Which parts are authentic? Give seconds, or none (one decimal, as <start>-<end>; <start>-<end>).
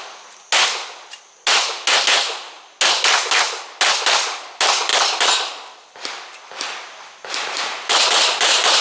0.0-8.8